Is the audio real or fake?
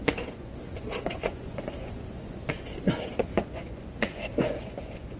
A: fake